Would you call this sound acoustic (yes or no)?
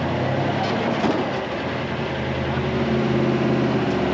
yes